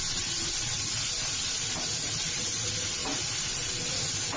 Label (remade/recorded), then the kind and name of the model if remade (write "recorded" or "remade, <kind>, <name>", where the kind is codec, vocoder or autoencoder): recorded